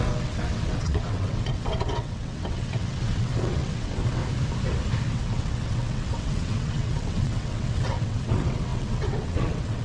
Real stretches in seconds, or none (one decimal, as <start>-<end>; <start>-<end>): 4.2-5.1